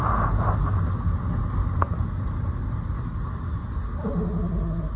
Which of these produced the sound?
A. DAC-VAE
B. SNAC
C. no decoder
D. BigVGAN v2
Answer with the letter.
C